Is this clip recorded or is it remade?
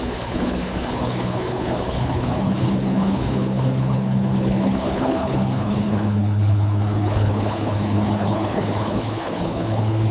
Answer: remade